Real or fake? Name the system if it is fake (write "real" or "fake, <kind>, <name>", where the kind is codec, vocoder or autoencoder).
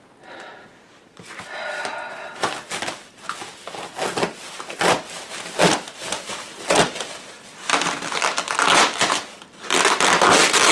real